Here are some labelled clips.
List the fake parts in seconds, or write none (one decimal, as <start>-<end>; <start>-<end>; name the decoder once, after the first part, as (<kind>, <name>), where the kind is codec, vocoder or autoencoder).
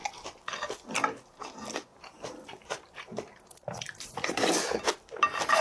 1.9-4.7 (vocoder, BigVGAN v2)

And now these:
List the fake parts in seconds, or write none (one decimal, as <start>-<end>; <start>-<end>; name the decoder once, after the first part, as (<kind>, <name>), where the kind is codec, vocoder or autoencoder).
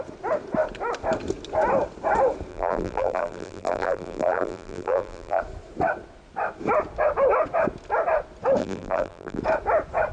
2.5-5.4 (vocoder, BigVGAN v2); 8.6-9.4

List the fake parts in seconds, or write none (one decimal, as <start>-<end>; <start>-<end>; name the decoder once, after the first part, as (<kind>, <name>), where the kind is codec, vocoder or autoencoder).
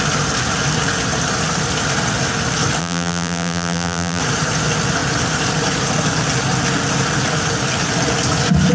2.8-4.2 (vocoder, BigVGAN v2)